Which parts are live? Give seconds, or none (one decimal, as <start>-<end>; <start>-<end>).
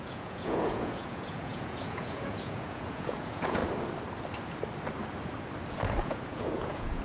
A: 3.6-6.0